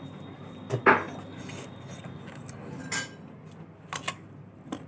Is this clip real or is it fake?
real